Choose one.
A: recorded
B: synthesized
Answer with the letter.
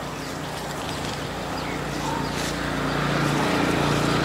A